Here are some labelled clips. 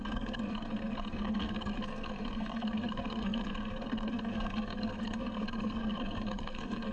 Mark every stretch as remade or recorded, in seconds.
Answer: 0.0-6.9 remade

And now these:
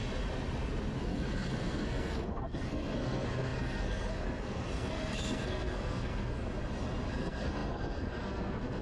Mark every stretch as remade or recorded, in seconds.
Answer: 0.0-1.0 recorded; 1.0-6.4 remade; 6.4-7.1 recorded; 7.1-8.8 remade

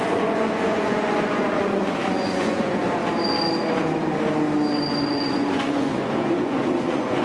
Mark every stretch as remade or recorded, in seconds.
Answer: 0.0-3.0 remade; 3.0-5.1 recorded; 5.1-7.2 remade

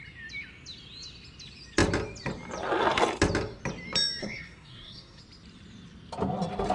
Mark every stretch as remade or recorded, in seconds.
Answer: 0.0-4.2 recorded; 4.2-5.2 remade; 5.2-6.7 recorded

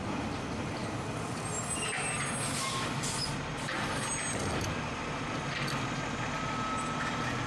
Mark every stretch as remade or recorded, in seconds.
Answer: 0.0-7.5 recorded